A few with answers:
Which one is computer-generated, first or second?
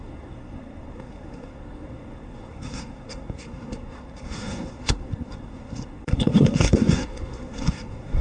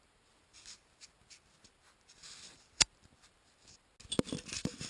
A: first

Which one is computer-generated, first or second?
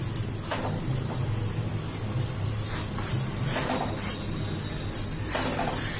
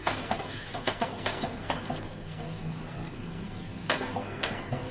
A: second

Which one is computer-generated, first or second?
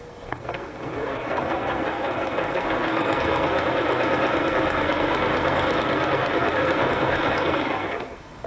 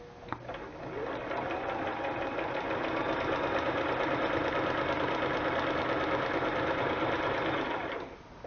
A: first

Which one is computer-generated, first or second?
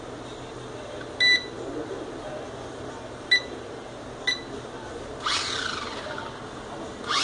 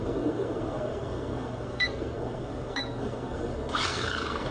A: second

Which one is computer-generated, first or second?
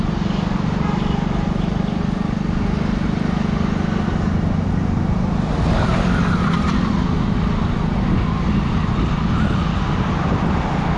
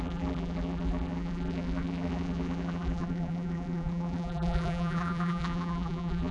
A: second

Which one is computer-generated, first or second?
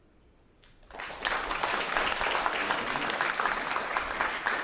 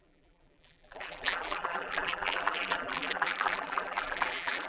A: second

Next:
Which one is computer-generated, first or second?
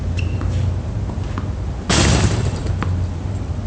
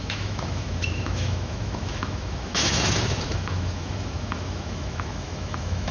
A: second